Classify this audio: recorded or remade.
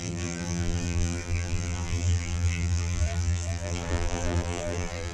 remade